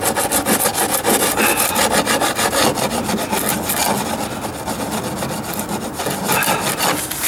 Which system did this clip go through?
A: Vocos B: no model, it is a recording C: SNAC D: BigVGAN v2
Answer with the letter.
B